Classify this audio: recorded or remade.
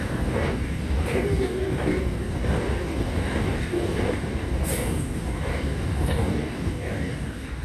remade